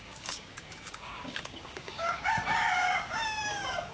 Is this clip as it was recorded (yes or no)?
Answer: no